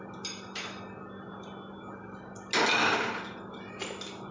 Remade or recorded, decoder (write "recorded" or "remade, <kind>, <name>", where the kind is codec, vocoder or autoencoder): recorded